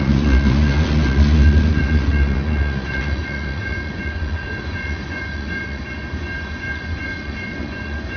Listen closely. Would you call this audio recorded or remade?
remade